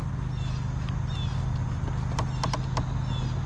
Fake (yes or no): no